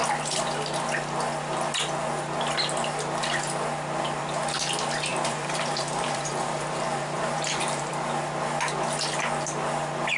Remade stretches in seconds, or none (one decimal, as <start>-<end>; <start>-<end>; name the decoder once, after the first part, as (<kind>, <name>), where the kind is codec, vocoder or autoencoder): 5.1-7.9 (vocoder, BigVGAN v2)

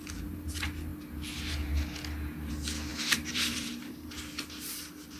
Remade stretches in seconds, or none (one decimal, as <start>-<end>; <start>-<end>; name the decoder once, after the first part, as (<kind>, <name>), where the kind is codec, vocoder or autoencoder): 2.9-4.2 (vocoder, BigVGAN v2)

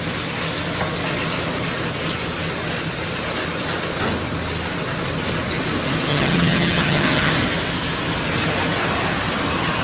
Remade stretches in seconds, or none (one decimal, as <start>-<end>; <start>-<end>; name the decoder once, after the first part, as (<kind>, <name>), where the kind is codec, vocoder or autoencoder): 6.1-7.3 (vocoder, HiFi-GAN)

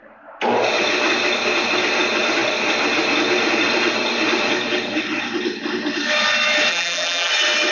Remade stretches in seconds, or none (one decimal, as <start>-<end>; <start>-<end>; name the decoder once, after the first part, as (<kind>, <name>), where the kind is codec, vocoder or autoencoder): 6.7-7.3 (vocoder, BigVGAN v2)